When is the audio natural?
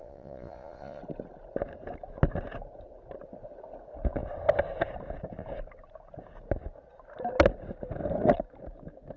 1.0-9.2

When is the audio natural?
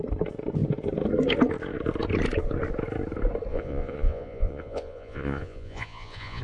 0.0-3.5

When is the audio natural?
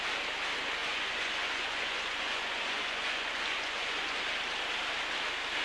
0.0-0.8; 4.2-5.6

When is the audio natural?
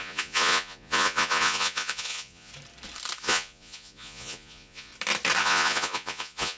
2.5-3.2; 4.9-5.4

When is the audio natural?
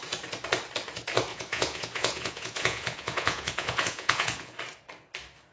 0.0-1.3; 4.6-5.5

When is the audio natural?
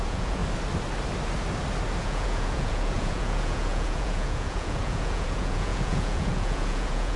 0.4-2.0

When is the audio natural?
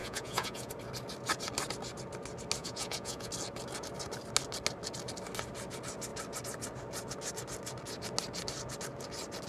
0.7-2.6; 3.3-9.5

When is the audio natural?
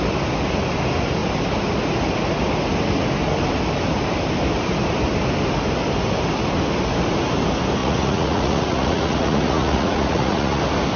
0.0-7.8; 10.6-11.0